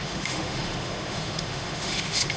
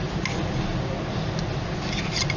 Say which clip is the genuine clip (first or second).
second